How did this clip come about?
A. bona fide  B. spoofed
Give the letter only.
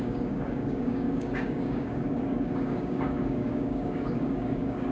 B